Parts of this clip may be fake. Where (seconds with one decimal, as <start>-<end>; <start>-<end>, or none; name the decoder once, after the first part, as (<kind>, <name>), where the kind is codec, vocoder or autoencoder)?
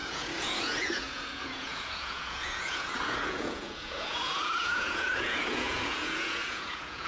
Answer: 0.0-7.1 (vocoder, Vocos)